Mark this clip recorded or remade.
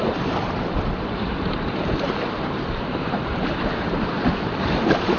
remade